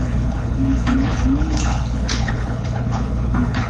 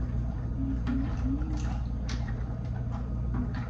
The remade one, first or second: first